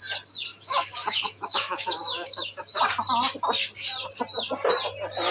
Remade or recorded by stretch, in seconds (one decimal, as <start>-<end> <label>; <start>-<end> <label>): 0.0-0.5 recorded; 0.5-2.8 remade; 2.8-5.3 recorded